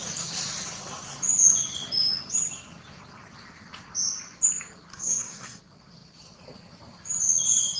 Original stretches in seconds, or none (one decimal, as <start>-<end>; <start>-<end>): 0.0-4.9; 5.6-7.8

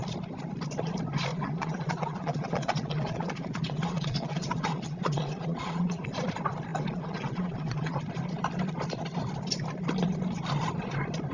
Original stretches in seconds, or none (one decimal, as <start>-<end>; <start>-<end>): 0.0-1.3; 6.1-6.7; 8.0-11.3

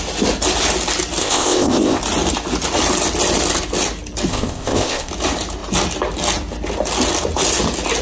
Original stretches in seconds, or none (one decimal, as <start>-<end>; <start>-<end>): 0.0-1.2; 2.0-4.3; 5.1-8.0

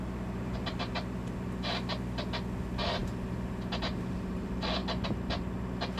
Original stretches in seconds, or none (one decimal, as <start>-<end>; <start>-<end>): 0.0-6.0

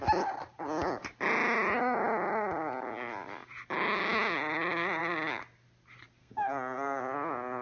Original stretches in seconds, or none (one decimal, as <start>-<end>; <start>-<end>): 0.0-6.2; 7.0-7.6

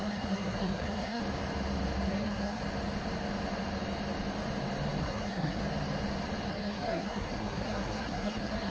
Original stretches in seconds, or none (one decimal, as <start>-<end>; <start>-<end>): 1.2-2.1; 2.6-5.0; 5.6-6.5

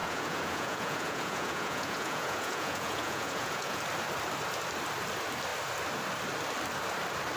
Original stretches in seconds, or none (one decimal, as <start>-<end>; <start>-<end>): 3.8-7.4

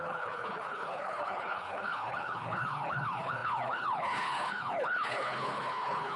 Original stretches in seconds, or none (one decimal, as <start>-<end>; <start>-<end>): none